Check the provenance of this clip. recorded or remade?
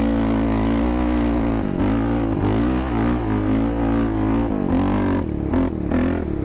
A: recorded